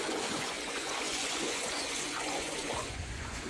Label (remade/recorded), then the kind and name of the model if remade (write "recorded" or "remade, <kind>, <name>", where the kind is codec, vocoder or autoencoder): remade, vocoder, Vocos